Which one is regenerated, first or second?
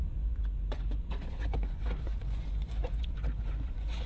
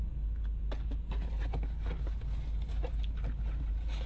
first